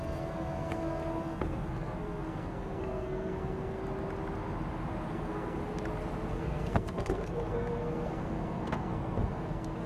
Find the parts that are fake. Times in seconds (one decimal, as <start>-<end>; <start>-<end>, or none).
0.0-3.8; 5.1-5.6; 6.3-9.9